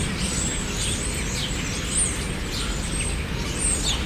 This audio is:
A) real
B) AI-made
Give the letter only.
A